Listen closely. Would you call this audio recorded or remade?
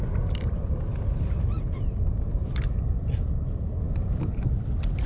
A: recorded